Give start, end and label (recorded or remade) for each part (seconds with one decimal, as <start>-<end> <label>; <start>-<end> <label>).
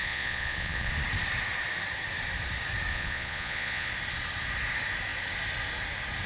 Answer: 0.0-0.9 remade; 0.9-2.9 recorded; 2.9-3.9 remade; 3.9-6.3 recorded